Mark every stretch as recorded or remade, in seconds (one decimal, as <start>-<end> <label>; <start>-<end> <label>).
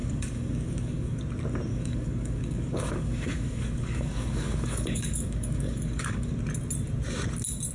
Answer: 0.0-1.2 remade; 1.2-1.7 recorded; 1.7-6.3 remade; 6.3-7.7 recorded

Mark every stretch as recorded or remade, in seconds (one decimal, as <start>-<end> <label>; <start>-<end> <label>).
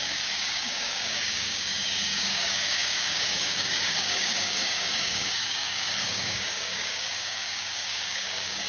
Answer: 0.0-8.7 remade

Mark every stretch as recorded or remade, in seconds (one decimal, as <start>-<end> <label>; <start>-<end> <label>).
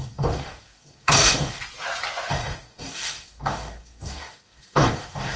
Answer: 0.0-1.6 remade; 1.6-2.3 recorded; 2.3-5.4 remade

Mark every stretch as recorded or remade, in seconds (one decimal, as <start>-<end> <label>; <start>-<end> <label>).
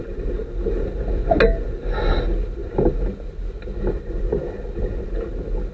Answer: 0.0-5.7 recorded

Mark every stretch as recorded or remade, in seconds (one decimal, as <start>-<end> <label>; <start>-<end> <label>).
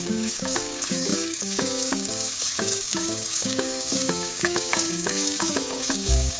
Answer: 0.0-6.4 remade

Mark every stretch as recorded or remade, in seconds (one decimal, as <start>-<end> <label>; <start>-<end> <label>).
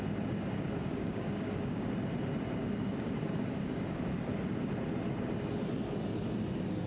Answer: 0.0-0.8 recorded; 0.8-1.9 remade; 1.9-2.6 recorded; 2.6-4.3 remade; 4.3-6.9 recorded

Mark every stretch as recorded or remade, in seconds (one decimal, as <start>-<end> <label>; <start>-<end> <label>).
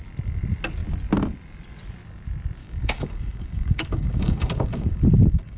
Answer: 0.0-2.6 recorded; 2.6-5.6 remade